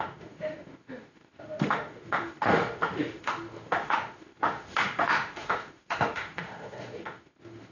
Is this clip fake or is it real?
fake